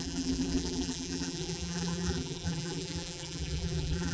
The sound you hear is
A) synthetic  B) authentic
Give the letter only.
A